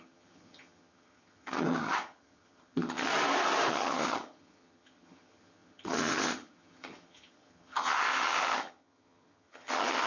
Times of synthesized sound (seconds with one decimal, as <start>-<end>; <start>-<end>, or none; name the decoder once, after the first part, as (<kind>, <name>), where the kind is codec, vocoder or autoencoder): 0.0-3.1 (vocoder, HiFi-GAN); 3.7-10.1